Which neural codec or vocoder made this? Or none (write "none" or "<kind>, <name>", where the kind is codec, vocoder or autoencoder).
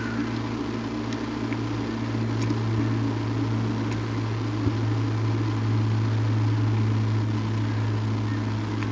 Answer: none